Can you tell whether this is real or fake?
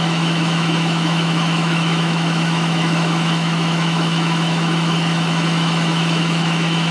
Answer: fake